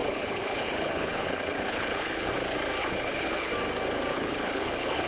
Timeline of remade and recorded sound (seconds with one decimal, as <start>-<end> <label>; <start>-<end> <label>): 0.0-2.3 remade; 2.3-2.8 recorded; 2.8-3.5 remade; 3.5-4.1 recorded; 4.1-5.1 remade